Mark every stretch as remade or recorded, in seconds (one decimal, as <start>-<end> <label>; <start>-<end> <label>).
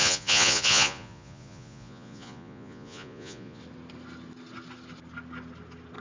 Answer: 0.0-3.6 remade; 3.6-6.0 recorded